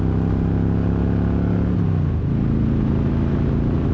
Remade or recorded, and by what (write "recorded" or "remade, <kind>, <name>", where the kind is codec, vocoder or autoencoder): recorded